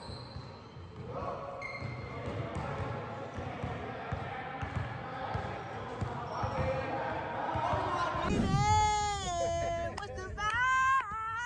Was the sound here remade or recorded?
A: recorded